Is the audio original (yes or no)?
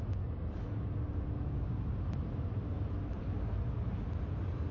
yes